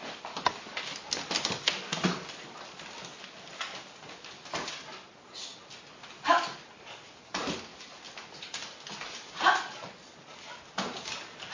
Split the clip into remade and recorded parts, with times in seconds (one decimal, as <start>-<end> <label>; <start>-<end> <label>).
0.0-7.7 recorded; 7.7-8.4 remade; 8.4-11.5 recorded